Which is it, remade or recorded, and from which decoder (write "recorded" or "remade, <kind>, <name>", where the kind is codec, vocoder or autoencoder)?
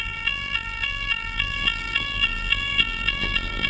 remade, vocoder, BigVGAN v2